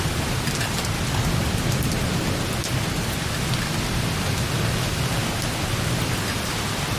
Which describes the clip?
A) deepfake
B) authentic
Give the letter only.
B